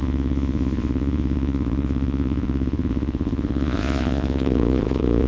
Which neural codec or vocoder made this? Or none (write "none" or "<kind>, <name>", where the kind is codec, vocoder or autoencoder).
vocoder, Vocos